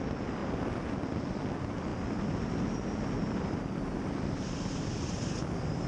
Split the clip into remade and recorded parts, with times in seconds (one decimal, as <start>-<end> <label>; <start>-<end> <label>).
0.0-5.9 recorded